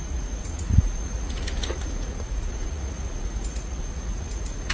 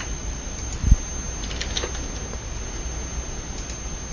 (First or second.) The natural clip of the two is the second